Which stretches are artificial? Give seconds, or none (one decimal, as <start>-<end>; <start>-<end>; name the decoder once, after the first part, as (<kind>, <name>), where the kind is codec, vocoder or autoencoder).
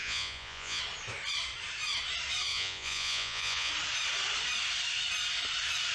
0.0-0.8 (vocoder, Vocos); 2.5-3.7